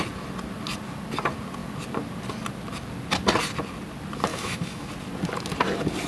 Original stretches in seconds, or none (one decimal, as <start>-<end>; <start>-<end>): 0.0-4.3; 4.9-6.1